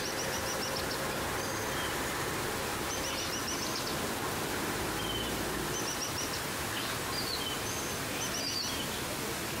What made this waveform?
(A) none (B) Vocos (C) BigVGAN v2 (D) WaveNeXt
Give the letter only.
A